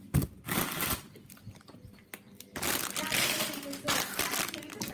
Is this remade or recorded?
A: recorded